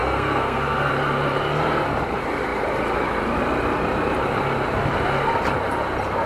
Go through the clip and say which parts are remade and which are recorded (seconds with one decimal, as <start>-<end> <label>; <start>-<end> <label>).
0.0-0.9 remade; 0.9-6.3 recorded